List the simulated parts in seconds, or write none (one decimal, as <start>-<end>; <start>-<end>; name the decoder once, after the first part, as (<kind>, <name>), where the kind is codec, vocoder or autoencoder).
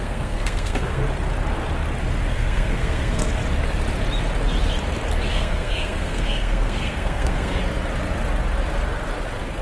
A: 0.0-1.0 (codec, SNAC); 2.3-3.3; 5.3-7.6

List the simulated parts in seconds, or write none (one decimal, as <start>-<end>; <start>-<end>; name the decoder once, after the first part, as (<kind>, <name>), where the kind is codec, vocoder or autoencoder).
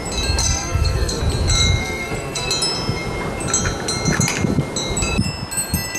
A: 0.4-1.2 (codec, SNAC); 1.8-2.5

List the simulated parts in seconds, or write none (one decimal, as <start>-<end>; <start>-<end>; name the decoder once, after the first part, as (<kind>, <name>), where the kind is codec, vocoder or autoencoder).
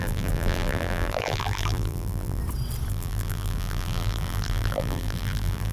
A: 0.0-2.4 (vocoder, BigVGAN v2); 2.9-5.7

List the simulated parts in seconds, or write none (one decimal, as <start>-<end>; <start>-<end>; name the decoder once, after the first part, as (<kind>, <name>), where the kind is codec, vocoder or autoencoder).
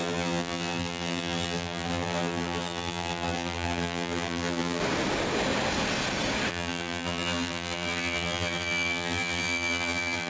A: 0.0-4.8 (vocoder, BigVGAN v2); 6.5-10.3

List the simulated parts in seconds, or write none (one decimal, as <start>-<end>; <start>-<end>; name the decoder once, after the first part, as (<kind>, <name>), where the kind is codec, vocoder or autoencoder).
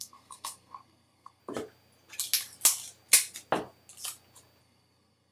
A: 0.0-1.4 (codec, SNAC); 4.6-5.3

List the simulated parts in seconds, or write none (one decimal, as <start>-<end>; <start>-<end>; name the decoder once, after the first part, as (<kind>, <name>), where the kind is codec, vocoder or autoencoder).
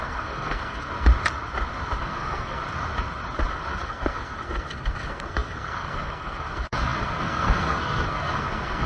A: 0.0-1.1 (codec, SNAC); 2.0-2.6; 3.5-8.9